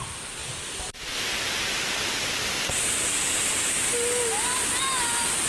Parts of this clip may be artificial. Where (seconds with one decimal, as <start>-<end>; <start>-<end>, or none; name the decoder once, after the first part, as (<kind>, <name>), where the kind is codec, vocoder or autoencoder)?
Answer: none